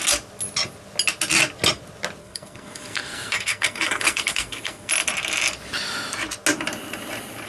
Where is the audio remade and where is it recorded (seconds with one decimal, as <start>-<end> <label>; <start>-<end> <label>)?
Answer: 0.0-2.2 recorded; 2.2-4.9 remade; 4.9-7.5 recorded